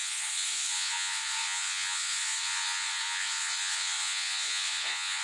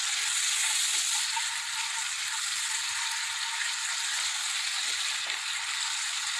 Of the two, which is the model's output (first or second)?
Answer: first